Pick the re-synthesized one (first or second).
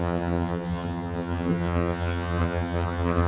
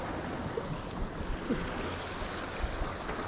first